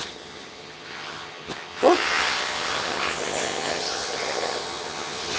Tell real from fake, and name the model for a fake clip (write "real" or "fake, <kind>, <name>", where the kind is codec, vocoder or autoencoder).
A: fake, vocoder, HiFi-GAN